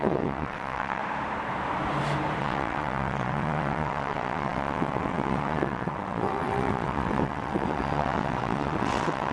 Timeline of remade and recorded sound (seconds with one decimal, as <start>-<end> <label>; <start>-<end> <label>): 0.0-1.0 remade; 1.0-2.4 recorded; 2.4-9.3 remade